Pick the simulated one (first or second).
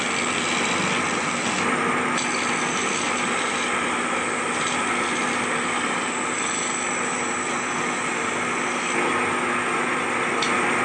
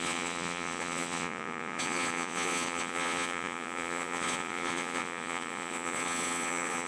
second